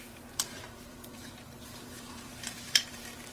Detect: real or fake fake